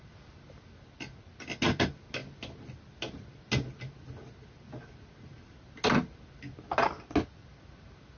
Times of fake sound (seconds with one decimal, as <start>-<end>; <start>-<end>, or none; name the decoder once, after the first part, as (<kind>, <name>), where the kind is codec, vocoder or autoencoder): none